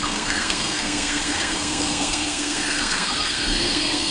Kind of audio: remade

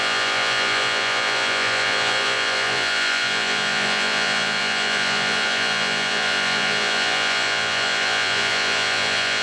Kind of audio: remade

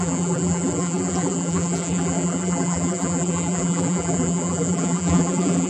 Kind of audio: remade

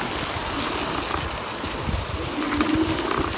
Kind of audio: recorded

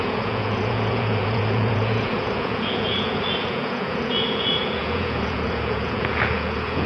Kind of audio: remade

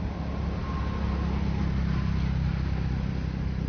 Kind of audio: recorded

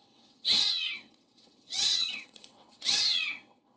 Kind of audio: remade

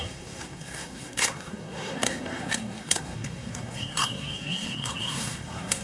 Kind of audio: remade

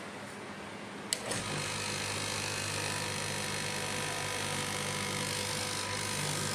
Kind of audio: recorded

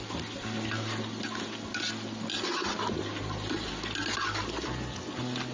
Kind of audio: recorded